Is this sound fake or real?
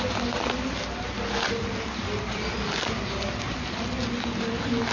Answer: real